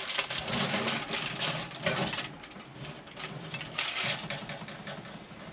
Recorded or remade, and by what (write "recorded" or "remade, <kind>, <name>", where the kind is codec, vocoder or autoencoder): recorded